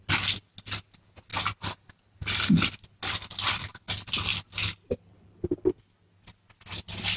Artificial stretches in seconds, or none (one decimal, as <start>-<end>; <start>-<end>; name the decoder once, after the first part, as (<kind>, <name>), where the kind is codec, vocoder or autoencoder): none